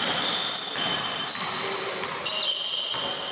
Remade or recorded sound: recorded